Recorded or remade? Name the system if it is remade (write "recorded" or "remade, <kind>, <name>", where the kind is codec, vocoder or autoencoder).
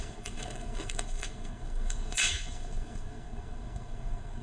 remade, codec, SNAC